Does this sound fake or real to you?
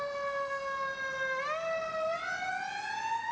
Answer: real